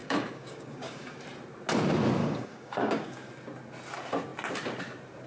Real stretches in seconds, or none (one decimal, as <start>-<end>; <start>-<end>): 1.2-2.2; 3.3-5.3